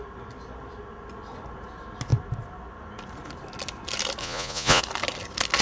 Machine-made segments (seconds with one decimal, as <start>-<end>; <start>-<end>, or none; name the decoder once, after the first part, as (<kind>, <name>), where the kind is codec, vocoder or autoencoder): 4.2-4.8 (vocoder, Vocos)